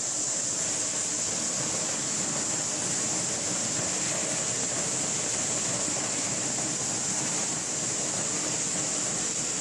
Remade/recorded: recorded